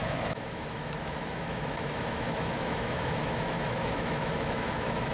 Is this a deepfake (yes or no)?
yes